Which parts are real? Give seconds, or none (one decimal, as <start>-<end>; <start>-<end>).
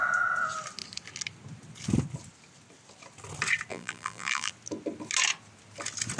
0.0-3.7; 4.5-6.2